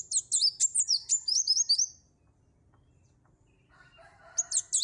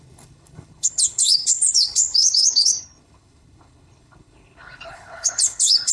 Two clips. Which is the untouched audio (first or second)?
first